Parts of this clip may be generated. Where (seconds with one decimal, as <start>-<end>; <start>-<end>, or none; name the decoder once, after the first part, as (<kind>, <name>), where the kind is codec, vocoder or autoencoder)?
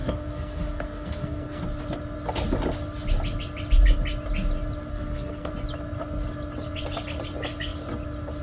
0.0-1.6 (codec, SNAC); 4.9-5.5